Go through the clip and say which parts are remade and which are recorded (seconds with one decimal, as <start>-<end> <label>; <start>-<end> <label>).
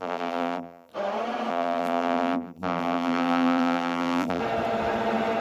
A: 0.0-0.9 remade; 0.9-1.5 recorded; 1.5-4.4 remade; 4.4-5.4 recorded